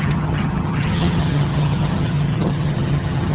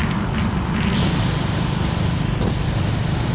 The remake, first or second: first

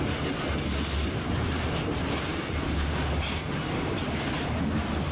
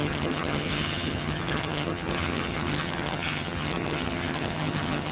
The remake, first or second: second